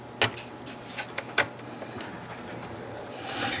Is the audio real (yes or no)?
yes